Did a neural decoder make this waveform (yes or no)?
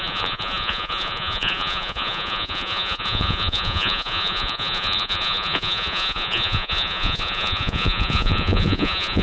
yes